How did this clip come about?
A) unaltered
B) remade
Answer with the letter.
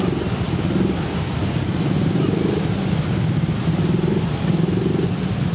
A